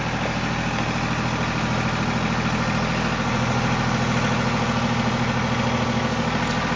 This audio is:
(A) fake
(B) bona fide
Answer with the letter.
B